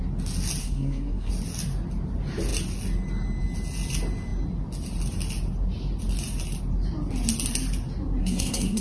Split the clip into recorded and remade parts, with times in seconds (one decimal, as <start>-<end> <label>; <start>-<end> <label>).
0.0-0.6 recorded; 0.6-1.3 remade; 1.3-8.2 recorded; 8.2-8.8 remade